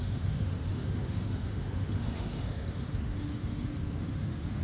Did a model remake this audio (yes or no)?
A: yes